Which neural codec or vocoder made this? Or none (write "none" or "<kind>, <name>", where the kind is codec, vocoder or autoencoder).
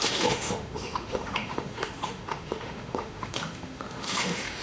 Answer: autoencoder, DAC-VAE